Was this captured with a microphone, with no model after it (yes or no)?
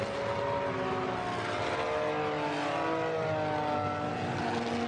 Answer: yes